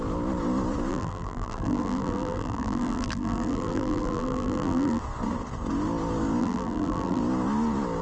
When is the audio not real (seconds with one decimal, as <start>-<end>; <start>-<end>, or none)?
0.9-5.0; 6.4-7.2